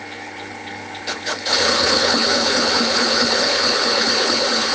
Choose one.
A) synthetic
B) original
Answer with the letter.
A